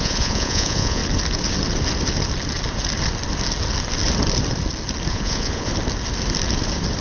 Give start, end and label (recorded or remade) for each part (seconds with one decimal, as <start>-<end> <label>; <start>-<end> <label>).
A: 0.0-1.0 remade; 1.0-5.1 recorded; 5.1-5.7 remade; 5.7-7.0 recorded